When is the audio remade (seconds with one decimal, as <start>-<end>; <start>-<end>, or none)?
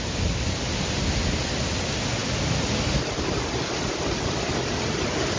none